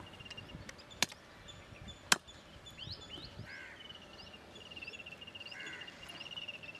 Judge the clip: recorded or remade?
recorded